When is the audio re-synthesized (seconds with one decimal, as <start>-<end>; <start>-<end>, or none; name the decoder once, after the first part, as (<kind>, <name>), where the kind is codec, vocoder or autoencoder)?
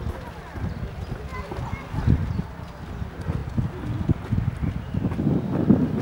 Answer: none